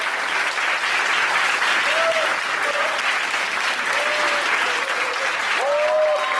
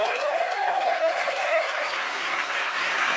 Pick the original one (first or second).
first